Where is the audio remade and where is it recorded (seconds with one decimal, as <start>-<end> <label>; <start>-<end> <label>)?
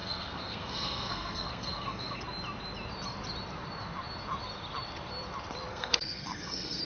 0.0-2.2 remade; 2.2-5.7 recorded; 5.7-6.8 remade